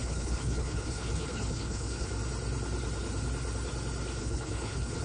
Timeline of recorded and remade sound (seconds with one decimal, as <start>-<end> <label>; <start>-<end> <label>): 0.0-2.1 remade; 2.1-4.2 recorded; 4.2-5.0 remade